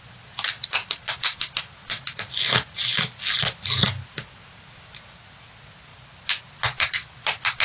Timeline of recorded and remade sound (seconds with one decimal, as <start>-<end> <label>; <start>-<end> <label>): 0.0-7.6 recorded